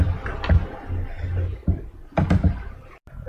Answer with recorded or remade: recorded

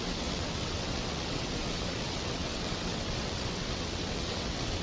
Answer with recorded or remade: remade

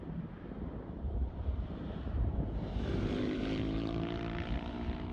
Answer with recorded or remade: remade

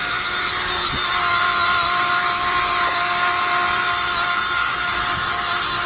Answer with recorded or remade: recorded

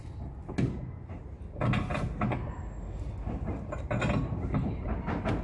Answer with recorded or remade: recorded